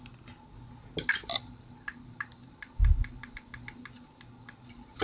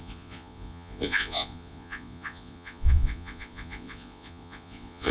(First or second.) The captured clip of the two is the first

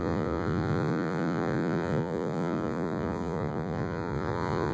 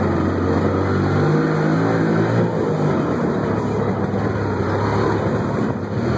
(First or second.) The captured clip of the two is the second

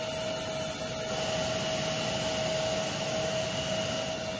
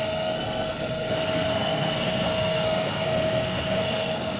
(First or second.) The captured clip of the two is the first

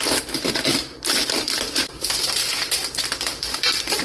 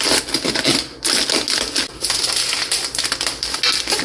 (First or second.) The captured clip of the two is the second